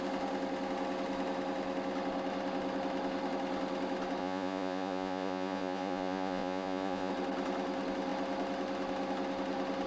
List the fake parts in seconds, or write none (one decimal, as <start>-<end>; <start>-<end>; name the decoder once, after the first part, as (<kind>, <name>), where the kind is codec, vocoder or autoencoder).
4.2-7.1 (vocoder, Vocos)